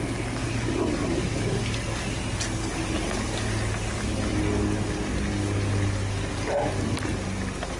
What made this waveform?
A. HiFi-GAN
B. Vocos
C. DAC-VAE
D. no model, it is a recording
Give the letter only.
D